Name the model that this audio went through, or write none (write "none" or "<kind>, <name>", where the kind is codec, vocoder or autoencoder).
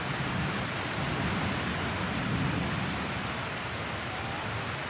vocoder, BigVGAN v2